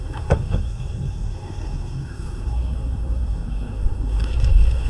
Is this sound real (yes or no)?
no